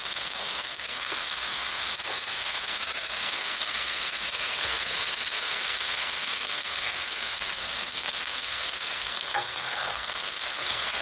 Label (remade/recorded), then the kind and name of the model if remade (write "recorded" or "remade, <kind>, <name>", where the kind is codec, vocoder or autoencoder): remade, codec, SNAC